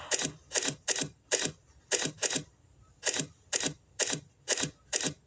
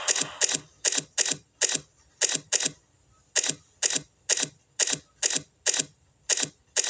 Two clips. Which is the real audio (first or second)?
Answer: second